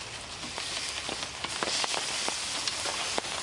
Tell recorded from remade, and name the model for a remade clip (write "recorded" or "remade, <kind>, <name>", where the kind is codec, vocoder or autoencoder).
recorded